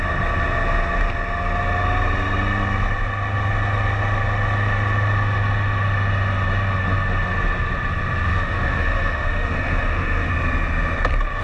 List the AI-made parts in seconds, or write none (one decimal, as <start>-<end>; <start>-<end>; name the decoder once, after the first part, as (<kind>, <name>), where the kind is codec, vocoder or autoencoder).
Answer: 8.3-10.3 (autoencoder, DAC-VAE)